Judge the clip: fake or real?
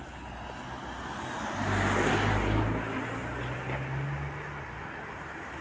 real